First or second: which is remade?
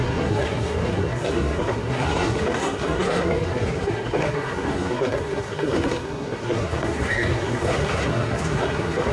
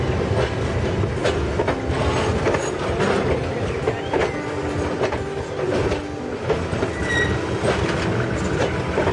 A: first